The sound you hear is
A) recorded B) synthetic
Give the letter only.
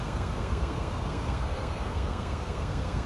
B